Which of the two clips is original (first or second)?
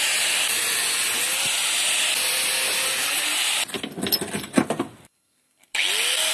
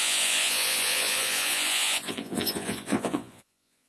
first